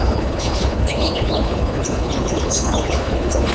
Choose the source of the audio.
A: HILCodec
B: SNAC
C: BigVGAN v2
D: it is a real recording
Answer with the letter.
A